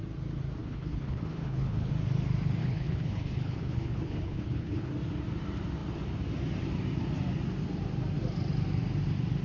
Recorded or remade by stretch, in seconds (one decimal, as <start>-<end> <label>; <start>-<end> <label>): 0.0-0.6 recorded; 0.6-1.9 remade; 1.9-2.6 recorded; 2.6-4.9 remade; 4.9-9.4 recorded

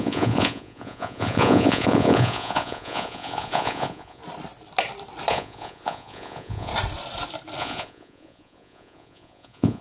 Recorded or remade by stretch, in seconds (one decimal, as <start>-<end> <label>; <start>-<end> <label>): 0.0-4.2 remade; 4.2-5.3 recorded; 5.3-6.7 remade; 6.7-7.6 recorded; 7.6-9.8 remade

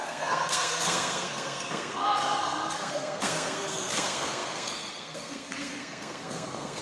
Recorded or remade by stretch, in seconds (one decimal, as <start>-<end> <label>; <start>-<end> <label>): 0.0-6.8 remade